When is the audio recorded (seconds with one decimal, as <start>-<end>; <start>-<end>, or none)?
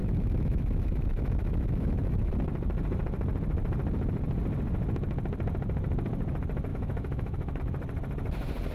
2.3-6.7; 7.6-8.7